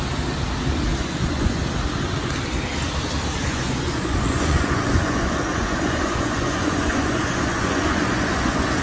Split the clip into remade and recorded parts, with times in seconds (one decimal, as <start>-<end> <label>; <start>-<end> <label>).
0.0-0.9 recorded; 0.9-1.6 remade; 1.6-3.5 recorded; 3.5-8.8 remade